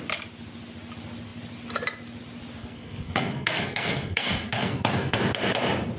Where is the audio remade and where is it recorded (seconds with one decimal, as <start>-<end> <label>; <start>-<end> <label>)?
0.0-2.6 recorded; 2.6-5.2 remade; 5.2-6.0 recorded